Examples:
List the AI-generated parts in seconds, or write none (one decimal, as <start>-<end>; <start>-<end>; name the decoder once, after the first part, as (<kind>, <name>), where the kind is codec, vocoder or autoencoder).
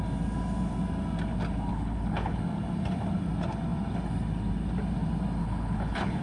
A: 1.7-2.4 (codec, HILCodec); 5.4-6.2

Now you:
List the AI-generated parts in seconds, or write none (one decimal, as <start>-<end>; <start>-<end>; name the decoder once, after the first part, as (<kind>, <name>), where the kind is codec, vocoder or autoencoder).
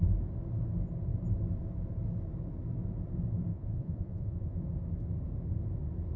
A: 3.5-4.6 (vocoder, Vocos)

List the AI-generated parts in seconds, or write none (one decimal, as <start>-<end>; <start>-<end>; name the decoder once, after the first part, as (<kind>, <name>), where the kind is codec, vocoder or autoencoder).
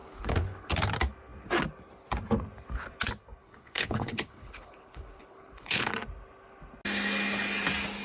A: 0.0-0.7 (codec, HILCodec); 3.4-5.9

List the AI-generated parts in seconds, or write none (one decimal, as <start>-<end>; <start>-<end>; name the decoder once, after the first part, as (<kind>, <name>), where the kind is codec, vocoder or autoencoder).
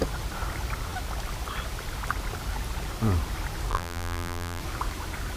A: 3.7-4.6 (vocoder, BigVGAN v2)